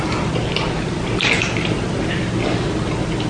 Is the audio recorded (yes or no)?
yes